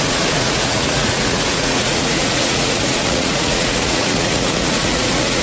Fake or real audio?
fake